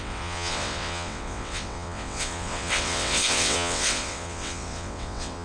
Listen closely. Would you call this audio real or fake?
fake